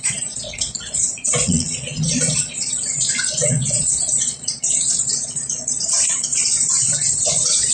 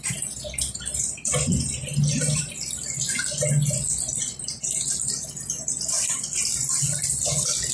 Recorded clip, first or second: second